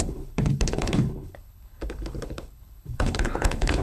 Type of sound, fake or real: fake